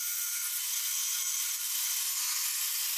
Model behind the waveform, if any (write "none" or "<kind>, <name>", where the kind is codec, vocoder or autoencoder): none